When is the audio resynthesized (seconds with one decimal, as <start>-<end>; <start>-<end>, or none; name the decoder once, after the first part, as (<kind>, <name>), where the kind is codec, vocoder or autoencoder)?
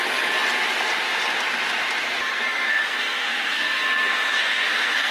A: 2.3-5.1 (codec, SNAC)